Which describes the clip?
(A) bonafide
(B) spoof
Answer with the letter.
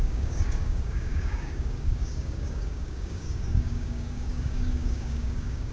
B